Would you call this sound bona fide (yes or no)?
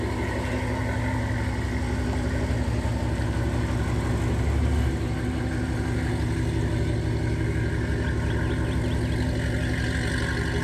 yes